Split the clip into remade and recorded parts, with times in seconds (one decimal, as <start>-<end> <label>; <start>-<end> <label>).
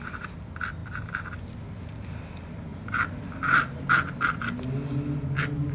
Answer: 0.0-5.7 recorded